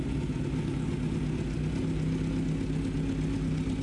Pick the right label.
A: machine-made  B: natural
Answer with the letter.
B